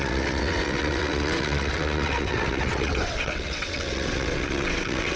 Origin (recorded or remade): remade